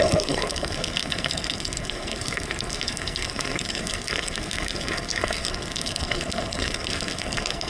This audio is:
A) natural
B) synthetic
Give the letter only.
B